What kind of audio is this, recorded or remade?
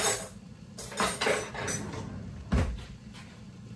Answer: recorded